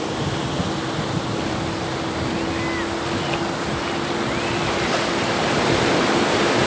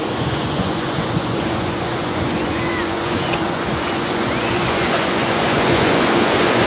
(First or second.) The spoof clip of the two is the second